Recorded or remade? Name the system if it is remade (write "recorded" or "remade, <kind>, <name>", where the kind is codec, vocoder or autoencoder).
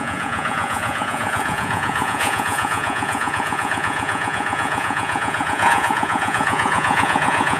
remade, vocoder, Vocos